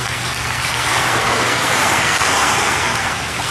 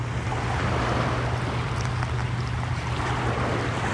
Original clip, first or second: second